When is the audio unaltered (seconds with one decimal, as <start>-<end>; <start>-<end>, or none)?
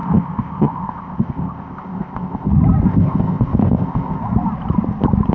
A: 2.5-2.9; 4.2-5.3